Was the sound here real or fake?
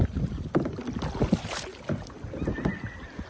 real